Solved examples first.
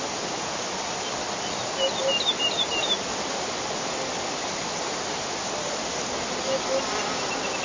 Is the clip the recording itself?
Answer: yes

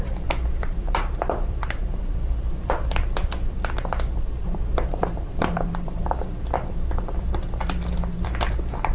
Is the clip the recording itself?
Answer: no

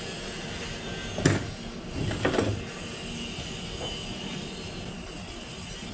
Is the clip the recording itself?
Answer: yes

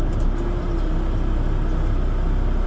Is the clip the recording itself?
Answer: yes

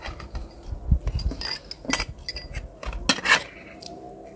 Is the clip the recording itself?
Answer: yes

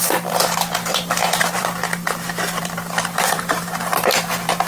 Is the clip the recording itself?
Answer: no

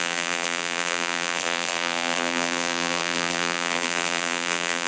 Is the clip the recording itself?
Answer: no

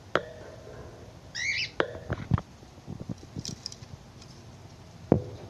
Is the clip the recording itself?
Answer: yes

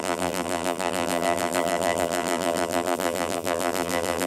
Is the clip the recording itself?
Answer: no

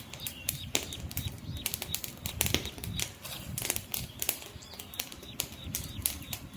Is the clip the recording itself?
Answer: yes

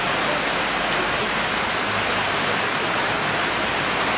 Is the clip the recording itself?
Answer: yes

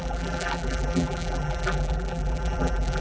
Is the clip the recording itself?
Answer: no